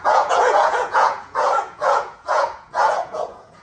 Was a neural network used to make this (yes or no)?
yes